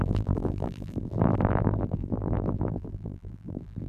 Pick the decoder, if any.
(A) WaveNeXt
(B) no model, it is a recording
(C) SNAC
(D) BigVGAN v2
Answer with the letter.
D